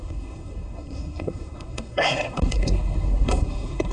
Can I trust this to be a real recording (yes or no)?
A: no